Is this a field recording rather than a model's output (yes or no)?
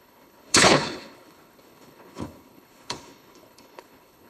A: no